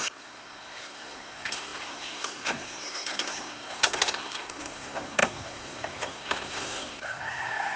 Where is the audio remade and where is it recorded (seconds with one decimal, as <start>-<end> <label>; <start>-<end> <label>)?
0.0-7.8 remade